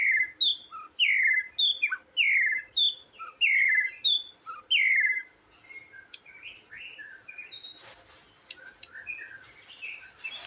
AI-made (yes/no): no